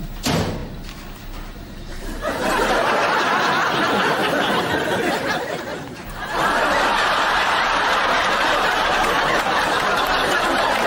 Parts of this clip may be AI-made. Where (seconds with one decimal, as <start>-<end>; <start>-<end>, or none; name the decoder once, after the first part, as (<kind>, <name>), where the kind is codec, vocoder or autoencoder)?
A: 1.9-3.1 (vocoder, BigVGAN v2); 4.2-5.2; 5.7-9.4